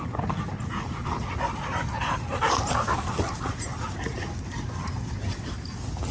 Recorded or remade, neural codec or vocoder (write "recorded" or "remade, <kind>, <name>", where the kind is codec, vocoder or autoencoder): recorded